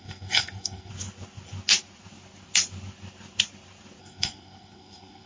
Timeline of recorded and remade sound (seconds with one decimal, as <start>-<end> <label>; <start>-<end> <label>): 0.0-0.9 remade; 0.9-4.0 recorded; 4.0-5.3 remade